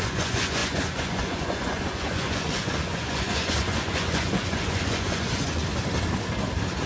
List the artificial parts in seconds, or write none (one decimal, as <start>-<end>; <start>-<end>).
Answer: 0.0-5.6